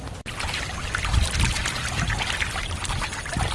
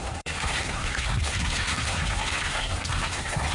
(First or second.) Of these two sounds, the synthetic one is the second